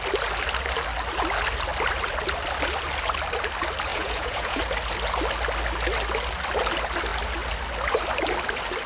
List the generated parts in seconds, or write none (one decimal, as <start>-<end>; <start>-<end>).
3.9-4.6

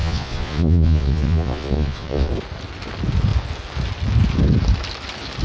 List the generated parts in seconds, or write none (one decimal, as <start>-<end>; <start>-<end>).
0.0-2.3